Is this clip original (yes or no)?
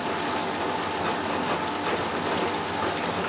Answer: yes